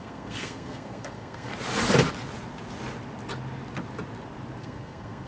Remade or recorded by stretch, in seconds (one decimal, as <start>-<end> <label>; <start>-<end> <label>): 0.0-1.5 remade; 1.5-4.6 recorded; 4.6-5.3 remade